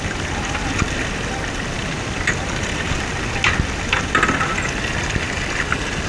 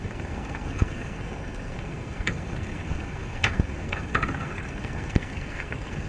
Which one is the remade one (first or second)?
second